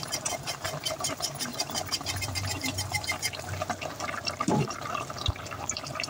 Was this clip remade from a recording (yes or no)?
yes